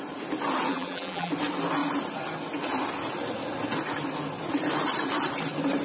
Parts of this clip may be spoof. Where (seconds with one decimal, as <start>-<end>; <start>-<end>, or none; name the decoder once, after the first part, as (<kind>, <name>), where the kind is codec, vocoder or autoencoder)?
0.7-1.3 (vocoder, BigVGAN v2)